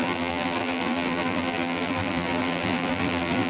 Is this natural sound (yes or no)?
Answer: no